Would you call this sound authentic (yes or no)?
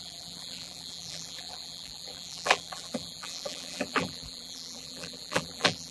no